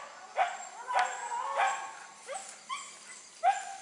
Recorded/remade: recorded